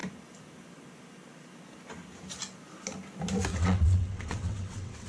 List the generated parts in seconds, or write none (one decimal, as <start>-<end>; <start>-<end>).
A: 3.5-5.1

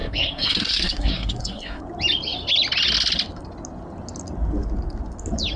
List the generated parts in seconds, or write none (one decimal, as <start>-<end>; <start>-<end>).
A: 0.0-1.8

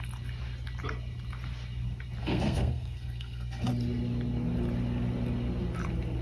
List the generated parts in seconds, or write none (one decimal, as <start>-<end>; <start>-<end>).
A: 2.2-3.7

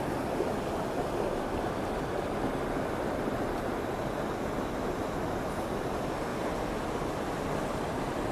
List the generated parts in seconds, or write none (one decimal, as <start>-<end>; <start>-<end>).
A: none

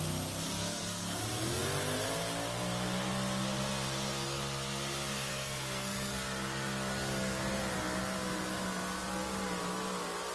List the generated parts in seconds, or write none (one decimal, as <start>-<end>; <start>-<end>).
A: 0.6-1.2; 5.3-6.1

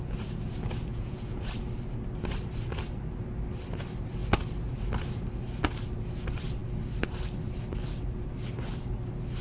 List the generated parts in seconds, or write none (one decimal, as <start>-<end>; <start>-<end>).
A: 0.9-1.4